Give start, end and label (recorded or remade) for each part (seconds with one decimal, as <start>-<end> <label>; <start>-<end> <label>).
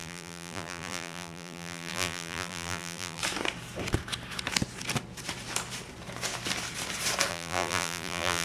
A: 0.0-3.2 remade; 3.2-7.3 recorded; 7.3-8.4 remade